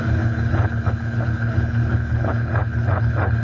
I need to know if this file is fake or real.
fake